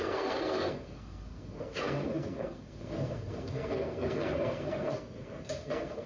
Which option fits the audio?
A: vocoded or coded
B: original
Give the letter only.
A